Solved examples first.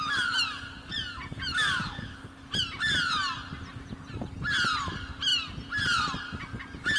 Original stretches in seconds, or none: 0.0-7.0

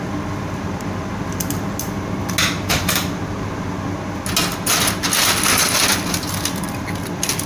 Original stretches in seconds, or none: 0.0-2.7; 3.7-7.5

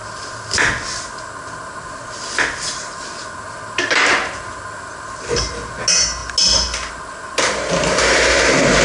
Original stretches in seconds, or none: 0.0-8.8

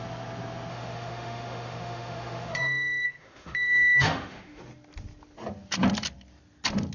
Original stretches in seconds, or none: 0.0-0.7; 4.6-6.9

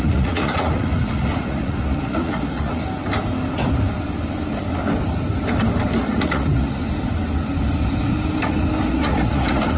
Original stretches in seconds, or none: 2.8-6.0; 6.8-8.9

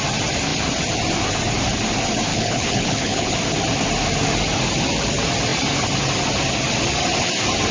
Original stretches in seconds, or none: 0.0-2.3; 3.4-7.7

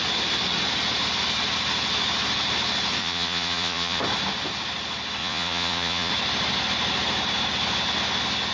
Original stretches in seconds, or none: 0.0-3.0; 4.0-5.2; 6.1-8.5

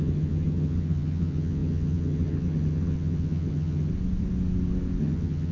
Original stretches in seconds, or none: 3.9-5.0